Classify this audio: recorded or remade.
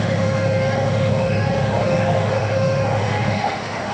remade